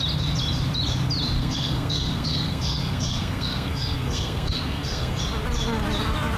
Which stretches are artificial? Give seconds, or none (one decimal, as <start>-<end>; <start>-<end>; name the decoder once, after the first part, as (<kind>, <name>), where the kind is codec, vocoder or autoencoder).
1.4-5.2 (codec, SNAC)